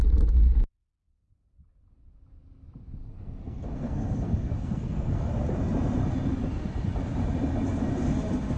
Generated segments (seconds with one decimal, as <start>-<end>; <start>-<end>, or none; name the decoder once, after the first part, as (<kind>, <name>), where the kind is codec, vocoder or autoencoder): 3.0-5.3 (codec, SNAC)